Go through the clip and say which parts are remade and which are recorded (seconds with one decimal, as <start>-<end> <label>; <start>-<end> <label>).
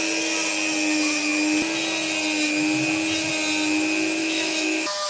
0.0-4.2 recorded; 4.2-5.1 remade